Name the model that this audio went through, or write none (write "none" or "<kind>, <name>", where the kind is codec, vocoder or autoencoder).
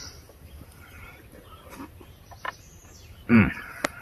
vocoder, BigVGAN v2